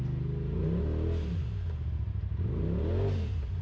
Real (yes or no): yes